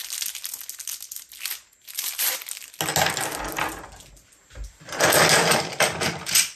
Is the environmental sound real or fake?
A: real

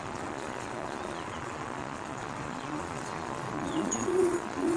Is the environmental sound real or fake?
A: fake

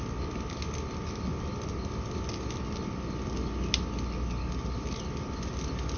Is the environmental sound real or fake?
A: real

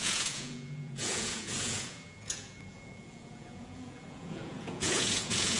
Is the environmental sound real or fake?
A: fake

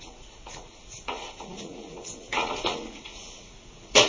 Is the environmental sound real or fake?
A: fake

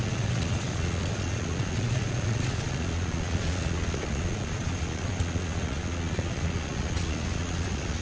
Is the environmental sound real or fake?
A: fake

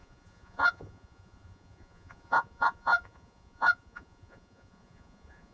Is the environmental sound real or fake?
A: fake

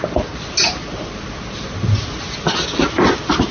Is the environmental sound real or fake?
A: real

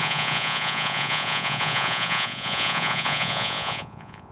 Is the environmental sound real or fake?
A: fake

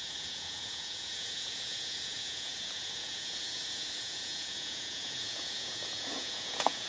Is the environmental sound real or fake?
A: fake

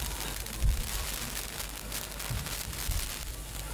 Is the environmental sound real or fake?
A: real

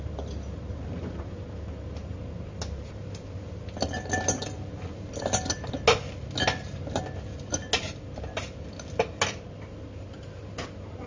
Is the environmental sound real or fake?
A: real